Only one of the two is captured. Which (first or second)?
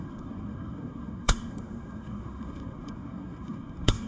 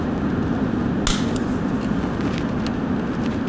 second